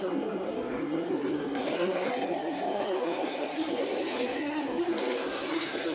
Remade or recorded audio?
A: remade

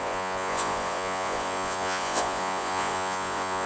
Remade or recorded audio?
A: remade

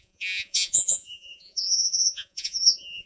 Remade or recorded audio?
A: remade